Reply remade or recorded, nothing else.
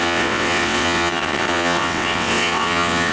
remade